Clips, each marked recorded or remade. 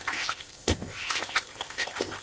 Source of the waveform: remade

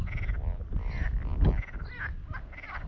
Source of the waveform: recorded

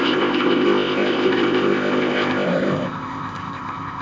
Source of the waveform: remade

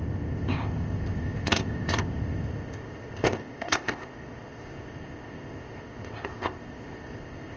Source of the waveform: remade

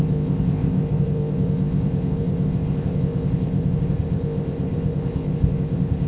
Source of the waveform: remade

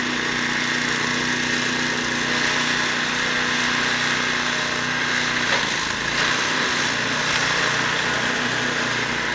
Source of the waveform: recorded